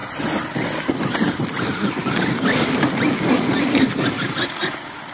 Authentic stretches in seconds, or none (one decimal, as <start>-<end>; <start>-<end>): 0.0-5.1